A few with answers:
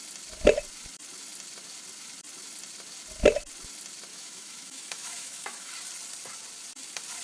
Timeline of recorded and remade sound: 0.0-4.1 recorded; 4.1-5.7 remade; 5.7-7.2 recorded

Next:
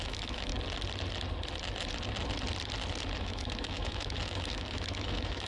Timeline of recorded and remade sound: 0.0-0.5 remade; 0.5-3.2 recorded; 3.2-5.5 remade

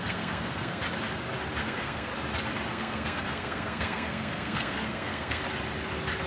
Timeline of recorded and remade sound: 0.0-0.8 remade; 0.8-1.6 recorded; 1.6-2.1 remade; 2.1-2.7 recorded; 2.7-5.4 remade; 5.4-6.3 recorded

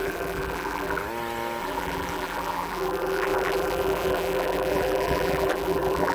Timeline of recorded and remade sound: 0.0-1.0 remade; 1.0-1.6 recorded; 1.6-6.1 remade

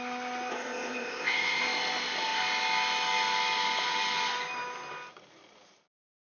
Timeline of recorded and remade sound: 0.0-0.5 recorded; 0.5-1.6 remade; 1.6-6.3 recorded

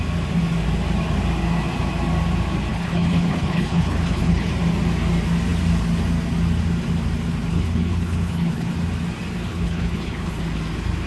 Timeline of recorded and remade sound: 0.0-2.7 recorded; 2.7-4.5 remade; 4.5-7.5 recorded; 7.5-8.7 remade; 8.7-9.5 recorded; 9.5-10.4 remade; 10.4-11.1 recorded

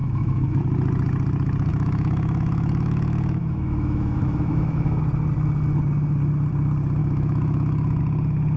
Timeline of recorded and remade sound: 0.0-0.6 remade; 0.6-1.7 recorded; 1.7-5.0 remade; 5.0-7.0 recorded; 7.0-8.0 remade; 8.0-8.6 recorded

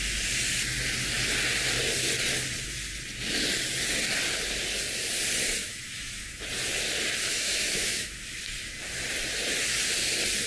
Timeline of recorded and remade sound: 0.0-5.6 recorded; 5.6-6.4 remade; 6.4-7.3 recorded; 7.3-8.4 remade; 8.4-10.5 recorded